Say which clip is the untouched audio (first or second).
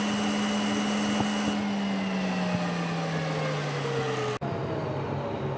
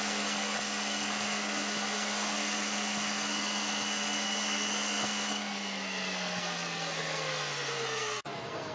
first